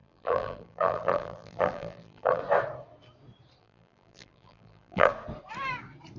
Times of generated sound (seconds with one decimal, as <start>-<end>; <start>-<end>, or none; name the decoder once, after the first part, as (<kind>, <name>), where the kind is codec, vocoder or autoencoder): 0.0-2.4 (vocoder, BigVGAN v2); 3.6-5.1